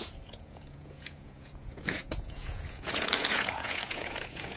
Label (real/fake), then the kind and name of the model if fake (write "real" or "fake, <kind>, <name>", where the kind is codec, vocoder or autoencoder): fake, vocoder, Vocos